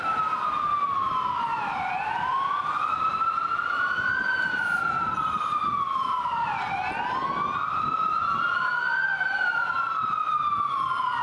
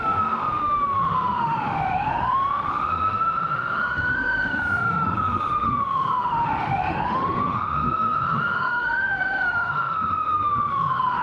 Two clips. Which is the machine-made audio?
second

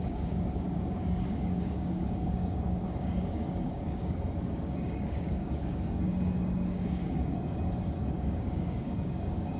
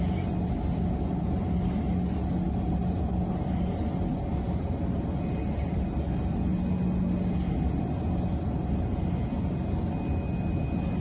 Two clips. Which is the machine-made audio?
first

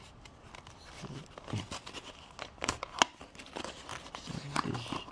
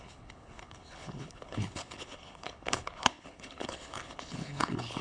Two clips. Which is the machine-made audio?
second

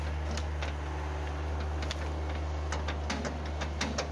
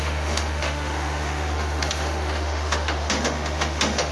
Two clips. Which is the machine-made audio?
second